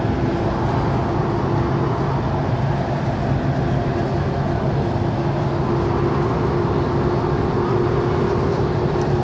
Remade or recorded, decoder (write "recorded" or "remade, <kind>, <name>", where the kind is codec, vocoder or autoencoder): recorded